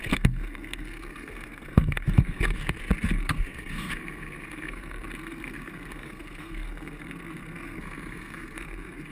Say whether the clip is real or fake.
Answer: fake